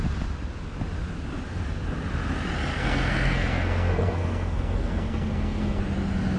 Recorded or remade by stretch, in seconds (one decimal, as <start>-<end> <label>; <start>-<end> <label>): 0.0-2.7 recorded; 2.7-5.8 remade; 5.8-6.4 recorded